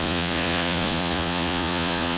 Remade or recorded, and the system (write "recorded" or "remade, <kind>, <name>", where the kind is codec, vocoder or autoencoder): remade, vocoder, Vocos